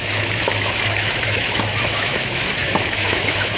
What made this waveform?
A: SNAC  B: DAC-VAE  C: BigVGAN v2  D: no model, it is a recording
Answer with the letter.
B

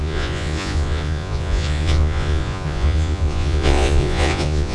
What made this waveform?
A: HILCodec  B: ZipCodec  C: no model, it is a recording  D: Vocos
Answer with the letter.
D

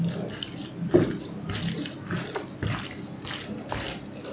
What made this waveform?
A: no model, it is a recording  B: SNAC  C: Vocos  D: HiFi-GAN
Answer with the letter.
A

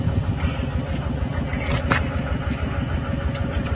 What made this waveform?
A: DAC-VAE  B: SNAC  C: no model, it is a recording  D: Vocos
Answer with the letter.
C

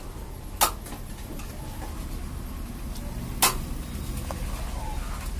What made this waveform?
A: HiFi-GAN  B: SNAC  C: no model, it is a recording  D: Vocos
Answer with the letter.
C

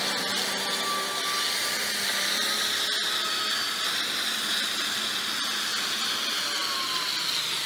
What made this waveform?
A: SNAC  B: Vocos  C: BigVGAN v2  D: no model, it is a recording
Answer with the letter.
D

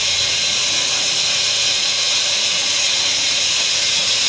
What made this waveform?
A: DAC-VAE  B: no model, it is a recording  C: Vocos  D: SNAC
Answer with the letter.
C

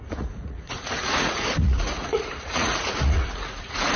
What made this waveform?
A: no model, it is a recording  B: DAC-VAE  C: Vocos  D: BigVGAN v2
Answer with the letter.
C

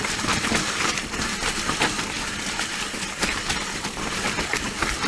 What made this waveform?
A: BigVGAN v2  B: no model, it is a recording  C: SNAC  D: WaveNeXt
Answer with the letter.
B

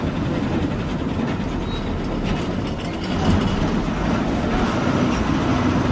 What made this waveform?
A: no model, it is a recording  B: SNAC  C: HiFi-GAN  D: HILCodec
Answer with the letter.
A